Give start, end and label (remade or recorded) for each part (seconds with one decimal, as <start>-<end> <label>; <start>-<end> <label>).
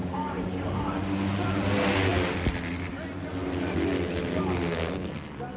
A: 0.0-1.0 remade; 1.0-4.2 recorded; 4.2-5.1 remade; 5.1-5.6 recorded